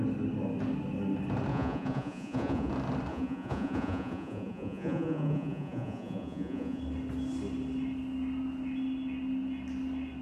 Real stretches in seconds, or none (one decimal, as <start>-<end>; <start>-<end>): 0.0-1.5; 2.7-3.1; 6.8-10.2